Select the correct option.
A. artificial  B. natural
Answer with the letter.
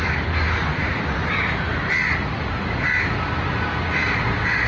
B